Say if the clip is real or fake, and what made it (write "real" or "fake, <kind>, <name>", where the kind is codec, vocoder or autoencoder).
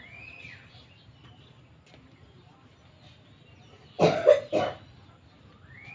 real